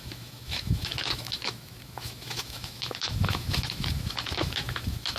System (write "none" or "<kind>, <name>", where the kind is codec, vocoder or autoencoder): autoencoder, DAC-VAE